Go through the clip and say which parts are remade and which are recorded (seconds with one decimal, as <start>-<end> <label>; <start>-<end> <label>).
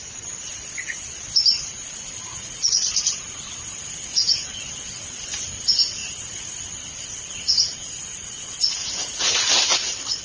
0.0-2.3 recorded; 2.3-3.0 remade; 3.0-6.0 recorded; 6.0-6.5 remade; 6.5-8.1 recorded; 8.1-10.2 remade